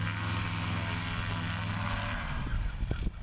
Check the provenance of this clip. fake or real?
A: real